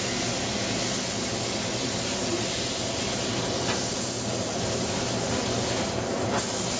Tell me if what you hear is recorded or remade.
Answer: recorded